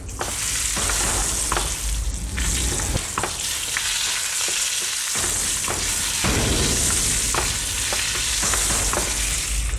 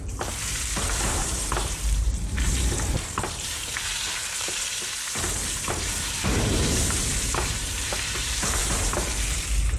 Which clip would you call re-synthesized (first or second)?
second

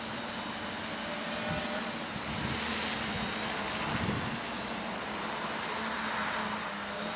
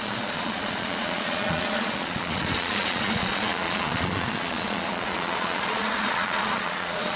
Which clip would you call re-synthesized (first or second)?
second